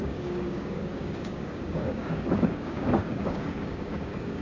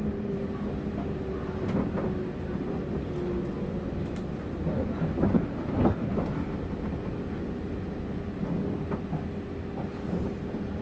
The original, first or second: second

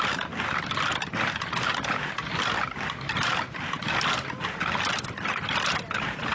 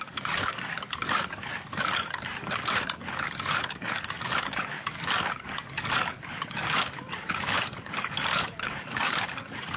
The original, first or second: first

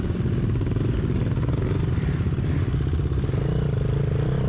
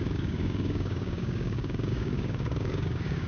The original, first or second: first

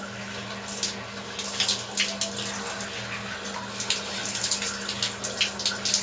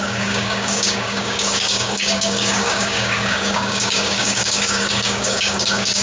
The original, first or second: first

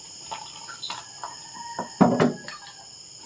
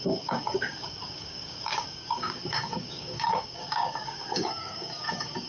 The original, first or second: first